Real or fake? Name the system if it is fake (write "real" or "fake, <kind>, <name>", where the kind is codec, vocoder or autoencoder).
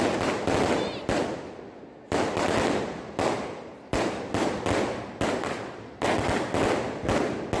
real